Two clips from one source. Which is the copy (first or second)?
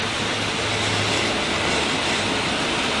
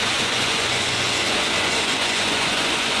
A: second